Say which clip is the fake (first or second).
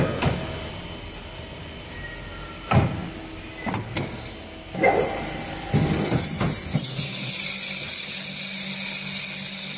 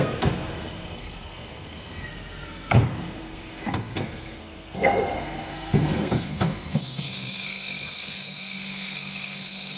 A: second